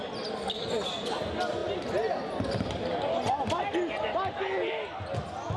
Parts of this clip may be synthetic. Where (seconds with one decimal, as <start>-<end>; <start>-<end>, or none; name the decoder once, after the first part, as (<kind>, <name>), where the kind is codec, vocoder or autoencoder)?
none